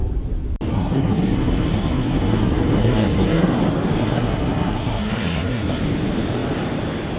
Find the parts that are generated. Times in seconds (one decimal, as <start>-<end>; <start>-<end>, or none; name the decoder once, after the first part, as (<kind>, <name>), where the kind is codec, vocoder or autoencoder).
0.7-3.6 (codec, SNAC); 4.0-5.8